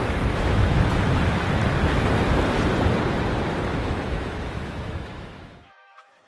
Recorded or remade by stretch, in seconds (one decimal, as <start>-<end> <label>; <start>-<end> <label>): 0.0-1.6 remade; 1.6-3.7 recorded; 3.7-6.3 remade